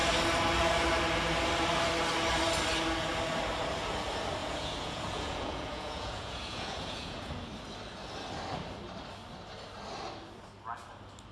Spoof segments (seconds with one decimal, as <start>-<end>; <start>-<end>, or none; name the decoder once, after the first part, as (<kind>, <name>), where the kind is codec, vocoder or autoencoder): 4.4-7.4 (vocoder, Vocos)